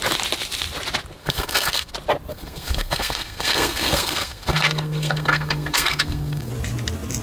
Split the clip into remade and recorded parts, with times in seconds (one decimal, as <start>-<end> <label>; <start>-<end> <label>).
0.0-1.2 recorded; 1.2-1.9 remade; 1.9-2.3 recorded; 2.3-6.5 remade; 6.5-7.2 recorded